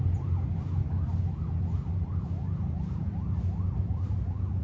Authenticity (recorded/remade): recorded